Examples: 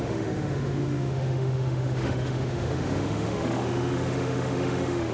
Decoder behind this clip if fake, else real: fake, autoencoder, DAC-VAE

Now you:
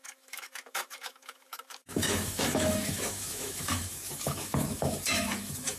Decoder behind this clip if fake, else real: fake, autoencoder, DAC-VAE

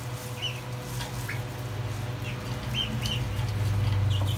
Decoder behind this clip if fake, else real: real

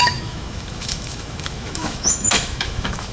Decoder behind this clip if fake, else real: fake, autoencoder, DAC-VAE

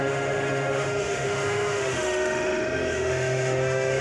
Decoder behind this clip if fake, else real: fake, autoencoder, DAC-VAE